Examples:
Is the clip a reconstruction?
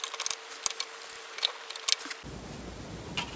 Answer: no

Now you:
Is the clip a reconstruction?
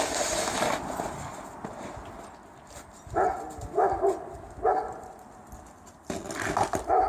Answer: no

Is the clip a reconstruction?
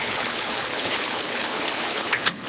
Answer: yes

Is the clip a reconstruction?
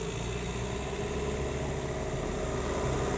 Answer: no